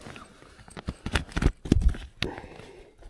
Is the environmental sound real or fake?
real